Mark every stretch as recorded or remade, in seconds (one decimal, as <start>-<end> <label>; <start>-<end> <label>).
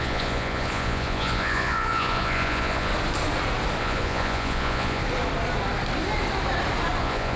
0.0-2.9 remade; 2.9-3.8 recorded; 3.8-5.0 remade; 5.0-7.0 recorded; 7.0-7.4 remade